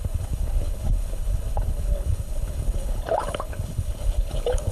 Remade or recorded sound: remade